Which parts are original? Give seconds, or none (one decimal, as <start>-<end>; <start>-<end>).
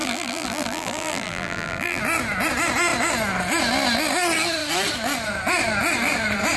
2.0-6.6